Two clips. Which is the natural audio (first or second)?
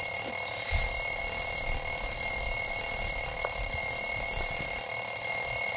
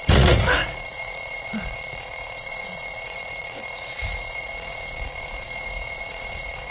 first